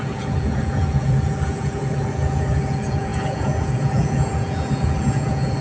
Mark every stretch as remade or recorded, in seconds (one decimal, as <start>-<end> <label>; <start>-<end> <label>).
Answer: 0.0-5.6 remade

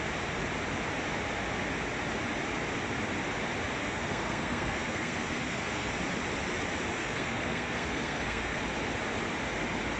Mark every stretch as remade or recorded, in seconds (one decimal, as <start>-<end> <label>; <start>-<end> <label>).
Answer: 0.0-3.8 recorded; 3.8-5.9 remade; 5.9-7.0 recorded; 7.0-8.6 remade; 8.6-10.0 recorded

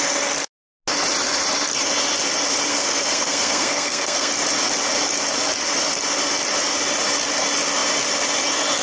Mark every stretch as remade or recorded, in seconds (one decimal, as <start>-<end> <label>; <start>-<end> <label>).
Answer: 0.0-2.7 recorded; 2.7-4.3 remade; 4.3-8.8 recorded

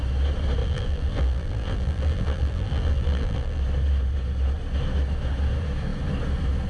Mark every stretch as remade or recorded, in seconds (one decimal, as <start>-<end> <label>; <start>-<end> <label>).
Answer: 0.0-0.6 recorded; 0.6-3.6 remade; 3.6-6.7 recorded

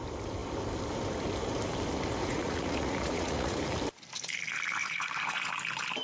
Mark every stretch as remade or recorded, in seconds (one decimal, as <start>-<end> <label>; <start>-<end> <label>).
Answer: 0.0-2.2 recorded; 2.2-3.6 remade; 3.6-4.8 recorded; 4.8-5.5 remade; 5.5-6.0 recorded

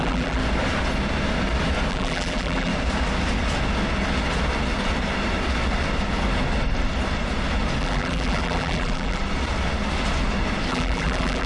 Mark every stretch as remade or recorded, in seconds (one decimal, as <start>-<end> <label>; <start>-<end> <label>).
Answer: 0.0-0.4 remade; 0.4-1.9 recorded; 1.9-2.7 remade; 2.7-7.8 recorded; 7.8-9.2 remade; 9.2-10.7 recorded; 10.7-11.5 remade

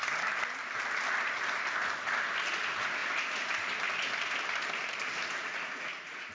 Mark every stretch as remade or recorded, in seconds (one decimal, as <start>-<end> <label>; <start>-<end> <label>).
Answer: 0.0-5.4 recorded; 5.4-6.3 remade